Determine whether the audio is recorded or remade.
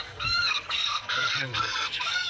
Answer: remade